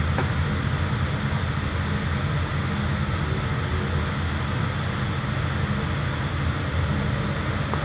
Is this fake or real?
real